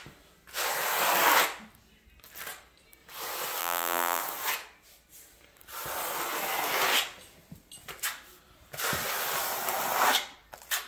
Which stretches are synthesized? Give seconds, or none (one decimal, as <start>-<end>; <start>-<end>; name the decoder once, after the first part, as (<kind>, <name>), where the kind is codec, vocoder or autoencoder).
3.6-4.2 (vocoder, BigVGAN v2)